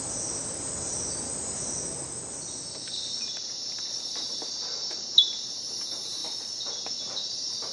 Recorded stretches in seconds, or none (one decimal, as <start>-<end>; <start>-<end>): 6.2-7.1

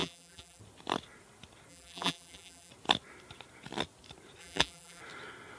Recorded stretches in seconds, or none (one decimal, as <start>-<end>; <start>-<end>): 0.6-1.7; 2.7-4.4; 5.0-5.6

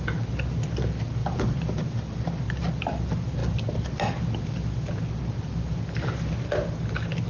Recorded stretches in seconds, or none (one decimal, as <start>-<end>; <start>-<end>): 0.0-1.2; 2.4-7.3

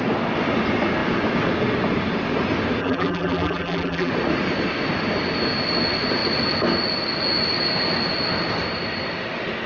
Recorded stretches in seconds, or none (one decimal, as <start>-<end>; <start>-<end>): 0.0-2.8; 4.1-9.7

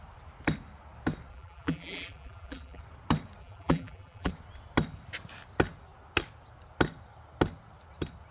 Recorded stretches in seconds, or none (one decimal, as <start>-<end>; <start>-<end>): 0.0-1.3; 2.8-3.4; 4.3-8.3